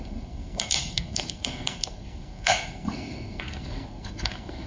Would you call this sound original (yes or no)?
no